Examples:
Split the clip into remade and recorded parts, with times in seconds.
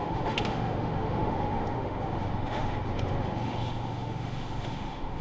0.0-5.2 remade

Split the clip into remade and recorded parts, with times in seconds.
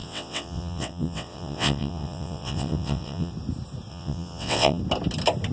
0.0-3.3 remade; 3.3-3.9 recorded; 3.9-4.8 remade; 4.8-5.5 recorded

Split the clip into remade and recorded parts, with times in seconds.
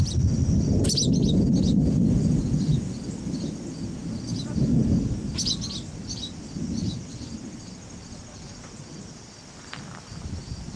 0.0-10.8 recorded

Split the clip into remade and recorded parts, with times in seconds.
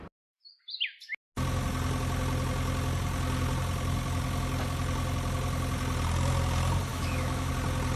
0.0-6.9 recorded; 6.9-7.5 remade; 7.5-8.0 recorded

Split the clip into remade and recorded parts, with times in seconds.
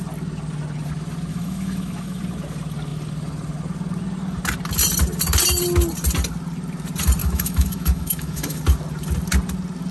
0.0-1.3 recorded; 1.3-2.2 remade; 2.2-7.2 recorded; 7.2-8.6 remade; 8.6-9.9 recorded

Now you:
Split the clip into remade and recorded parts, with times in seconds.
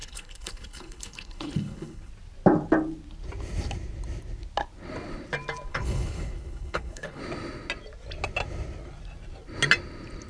0.0-2.1 remade; 2.1-5.7 recorded; 5.7-7.2 remade; 7.2-10.3 recorded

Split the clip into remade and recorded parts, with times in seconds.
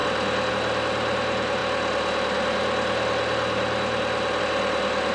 0.0-5.1 recorded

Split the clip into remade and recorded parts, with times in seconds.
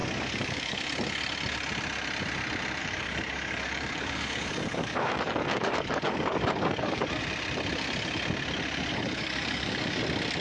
0.0-0.8 remade; 0.8-2.8 recorded; 2.8-7.2 remade; 7.2-8.9 recorded; 8.9-10.0 remade; 10.0-10.4 recorded